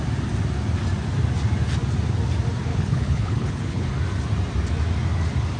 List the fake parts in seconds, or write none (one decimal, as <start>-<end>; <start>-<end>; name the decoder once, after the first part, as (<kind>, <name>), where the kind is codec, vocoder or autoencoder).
2.7-3.9 (codec, HILCodec)